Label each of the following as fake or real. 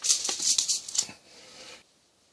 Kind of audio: real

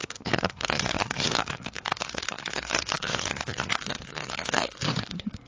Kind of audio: fake